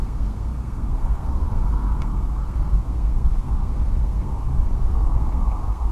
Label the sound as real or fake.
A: fake